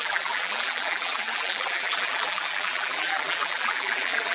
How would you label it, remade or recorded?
remade